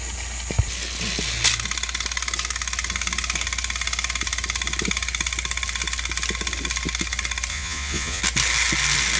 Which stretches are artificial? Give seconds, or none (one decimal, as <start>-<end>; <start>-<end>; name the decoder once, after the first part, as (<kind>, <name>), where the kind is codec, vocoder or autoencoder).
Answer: 7.5-8.2 (vocoder, Vocos)